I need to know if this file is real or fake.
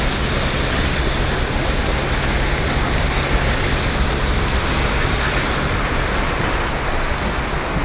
real